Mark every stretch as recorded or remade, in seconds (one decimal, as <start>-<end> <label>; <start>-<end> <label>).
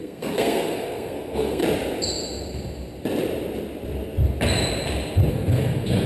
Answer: 0.0-1.6 remade; 1.6-5.3 recorded; 5.3-6.1 remade